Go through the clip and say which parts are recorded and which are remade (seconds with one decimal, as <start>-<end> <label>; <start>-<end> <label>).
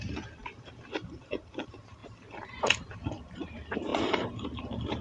0.0-5.0 remade